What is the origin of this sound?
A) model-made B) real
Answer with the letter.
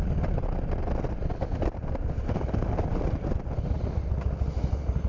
B